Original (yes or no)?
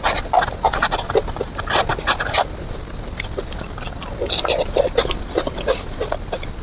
yes